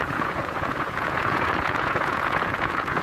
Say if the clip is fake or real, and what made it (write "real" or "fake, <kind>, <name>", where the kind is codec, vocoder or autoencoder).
fake, vocoder, Vocos